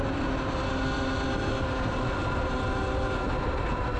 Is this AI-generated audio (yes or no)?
no